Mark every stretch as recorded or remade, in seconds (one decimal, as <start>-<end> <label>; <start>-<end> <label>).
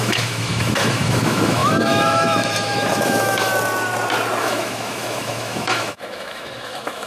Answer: 0.0-3.5 remade; 3.5-4.4 recorded; 4.4-7.1 remade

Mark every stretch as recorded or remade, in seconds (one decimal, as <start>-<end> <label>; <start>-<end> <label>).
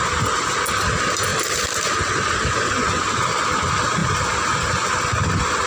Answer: 0.0-5.7 recorded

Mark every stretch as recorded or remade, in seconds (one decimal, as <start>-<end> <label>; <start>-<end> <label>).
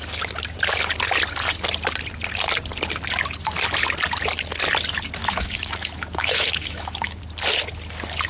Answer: 0.0-5.2 recorded; 5.2-7.2 remade; 7.2-8.3 recorded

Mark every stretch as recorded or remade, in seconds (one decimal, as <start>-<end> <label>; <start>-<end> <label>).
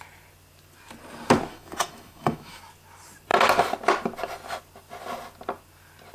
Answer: 0.0-1.5 recorded; 1.5-2.6 remade; 2.6-6.1 recorded